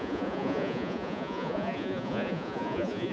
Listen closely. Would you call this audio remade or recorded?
remade